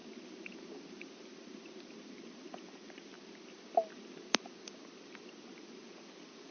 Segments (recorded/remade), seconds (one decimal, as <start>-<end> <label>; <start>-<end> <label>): 0.0-2.4 recorded; 2.4-3.1 remade; 3.1-5.6 recorded; 5.6-6.5 remade